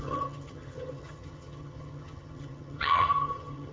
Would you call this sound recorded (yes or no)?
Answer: no